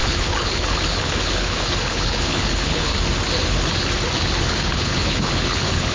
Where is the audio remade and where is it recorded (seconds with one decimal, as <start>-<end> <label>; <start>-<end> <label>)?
0.0-2.9 remade; 2.9-4.4 recorded; 4.4-5.9 remade